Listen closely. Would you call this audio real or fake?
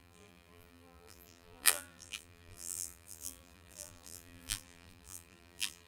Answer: fake